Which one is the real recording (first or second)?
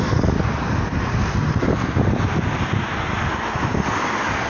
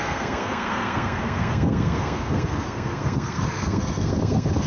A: first